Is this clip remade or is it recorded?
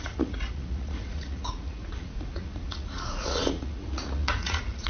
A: remade